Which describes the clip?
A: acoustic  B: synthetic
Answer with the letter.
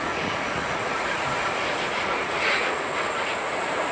B